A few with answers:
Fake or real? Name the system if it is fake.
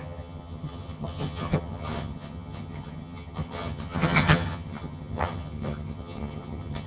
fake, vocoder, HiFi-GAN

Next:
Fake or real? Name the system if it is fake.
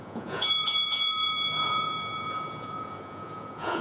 fake, vocoder, Vocos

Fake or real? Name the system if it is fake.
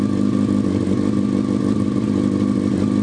real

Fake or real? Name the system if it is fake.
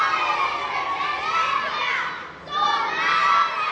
fake, vocoder, BigVGAN v2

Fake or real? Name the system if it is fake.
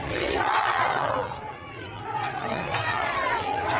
fake, vocoder, WaveNeXt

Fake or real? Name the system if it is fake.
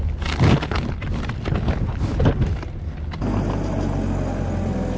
real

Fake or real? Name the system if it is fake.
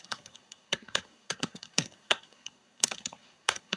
fake, codec, SNAC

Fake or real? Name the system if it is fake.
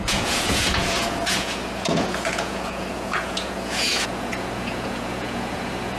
fake, vocoder, Vocos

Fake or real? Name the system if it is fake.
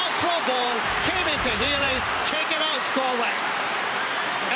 fake, vocoder, BigVGAN v2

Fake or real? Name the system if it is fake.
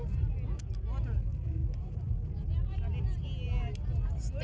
real